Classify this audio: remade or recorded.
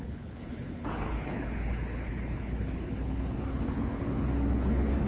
remade